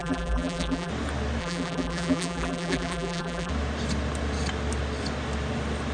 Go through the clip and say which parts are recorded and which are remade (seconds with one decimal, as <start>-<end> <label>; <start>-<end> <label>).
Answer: 0.0-0.9 remade; 0.9-1.4 recorded; 1.4-3.5 remade; 3.5-5.9 recorded